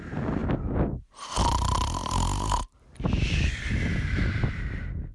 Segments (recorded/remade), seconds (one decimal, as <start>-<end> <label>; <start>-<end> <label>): 0.0-5.1 recorded